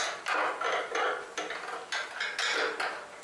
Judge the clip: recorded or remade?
recorded